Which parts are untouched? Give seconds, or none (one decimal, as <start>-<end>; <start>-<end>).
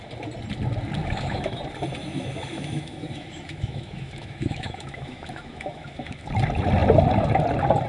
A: 0.0-1.0; 1.6-2.0; 6.3-7.9